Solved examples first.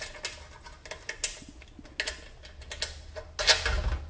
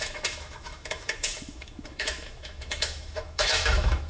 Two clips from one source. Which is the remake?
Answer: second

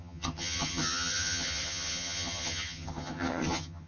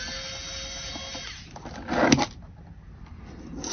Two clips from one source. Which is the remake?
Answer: first